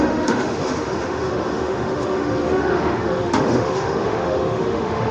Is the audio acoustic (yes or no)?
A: no